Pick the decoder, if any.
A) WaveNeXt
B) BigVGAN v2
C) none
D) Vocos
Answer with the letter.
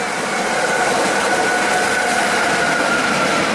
B